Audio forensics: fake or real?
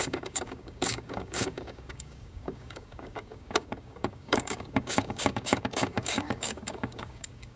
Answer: fake